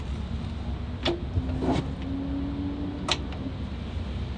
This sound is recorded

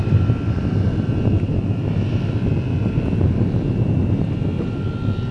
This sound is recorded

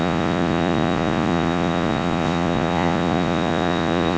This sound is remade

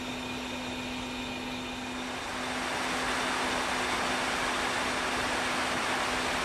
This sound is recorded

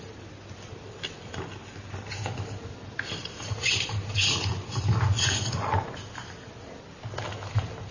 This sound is recorded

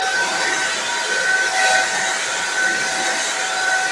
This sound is recorded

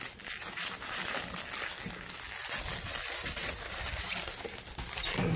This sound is recorded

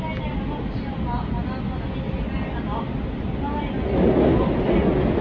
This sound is recorded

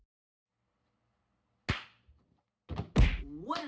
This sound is recorded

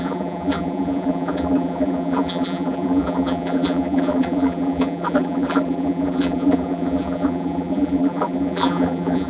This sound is remade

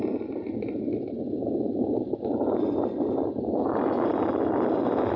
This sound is recorded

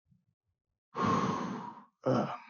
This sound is recorded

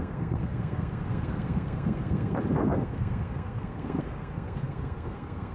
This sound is remade